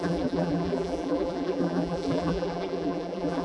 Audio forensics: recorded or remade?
remade